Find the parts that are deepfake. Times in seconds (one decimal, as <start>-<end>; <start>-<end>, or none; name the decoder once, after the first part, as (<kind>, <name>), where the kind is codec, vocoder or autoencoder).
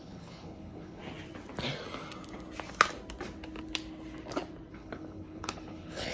0.0-1.0 (codec, HILCodec); 4.7-6.1